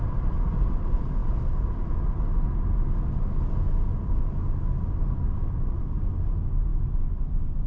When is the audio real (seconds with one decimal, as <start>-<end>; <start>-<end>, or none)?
0.0-7.7